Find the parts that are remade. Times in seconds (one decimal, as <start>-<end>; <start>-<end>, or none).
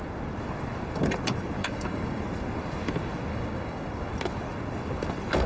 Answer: 1.6-2.2; 3.3-4.1